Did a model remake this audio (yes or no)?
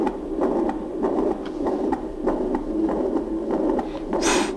no